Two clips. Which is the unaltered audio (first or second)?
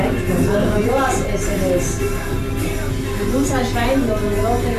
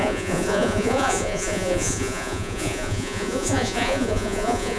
first